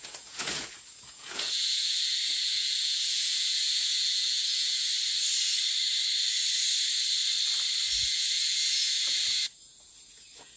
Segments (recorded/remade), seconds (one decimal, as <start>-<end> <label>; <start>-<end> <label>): 0.0-4.9 remade; 4.9-8.1 recorded; 8.1-10.6 remade